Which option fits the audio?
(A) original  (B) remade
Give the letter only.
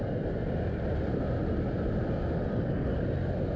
A